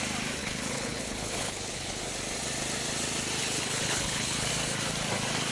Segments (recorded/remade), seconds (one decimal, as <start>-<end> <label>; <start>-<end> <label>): 0.0-0.4 recorded; 0.4-2.0 remade; 2.0-3.4 recorded; 3.4-4.5 remade; 4.5-5.5 recorded